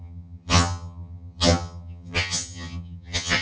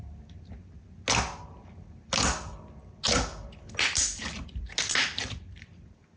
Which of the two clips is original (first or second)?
second